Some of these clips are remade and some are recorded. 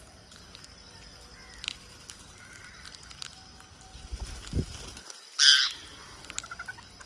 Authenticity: recorded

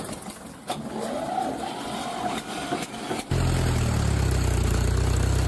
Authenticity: recorded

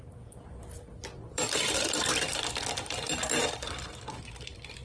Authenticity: remade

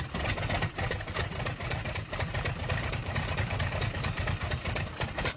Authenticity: remade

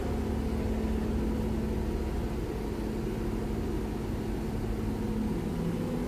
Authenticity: recorded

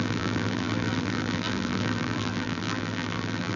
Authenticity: remade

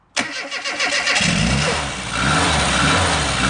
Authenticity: recorded